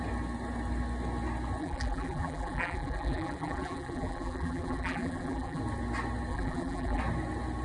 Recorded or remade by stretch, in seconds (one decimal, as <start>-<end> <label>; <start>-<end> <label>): 0.0-1.6 recorded; 1.6-5.6 remade; 5.6-6.3 recorded; 6.3-7.0 remade; 7.0-7.6 recorded